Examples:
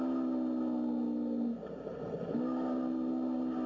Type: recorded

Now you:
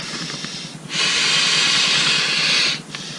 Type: recorded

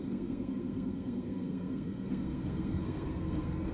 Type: remade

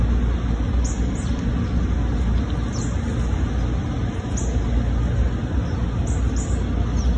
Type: recorded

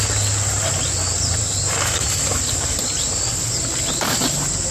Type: recorded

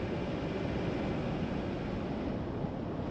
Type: recorded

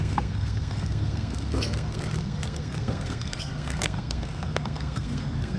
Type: remade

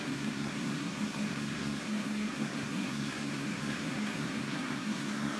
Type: remade